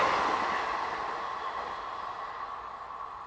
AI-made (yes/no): no